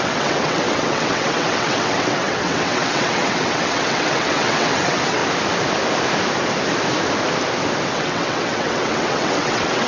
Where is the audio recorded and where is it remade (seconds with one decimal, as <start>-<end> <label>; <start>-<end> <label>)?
0.0-5.2 remade; 5.2-7.9 recorded; 7.9-9.9 remade